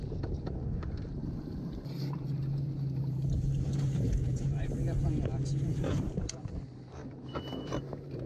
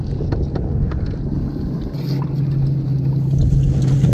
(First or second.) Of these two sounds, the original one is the second